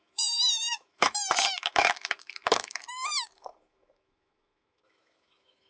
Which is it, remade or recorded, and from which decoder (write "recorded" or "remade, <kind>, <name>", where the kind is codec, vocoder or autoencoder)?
remade, autoencoder, DAC-VAE